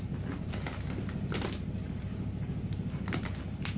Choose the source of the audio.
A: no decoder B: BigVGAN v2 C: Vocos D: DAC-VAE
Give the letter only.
A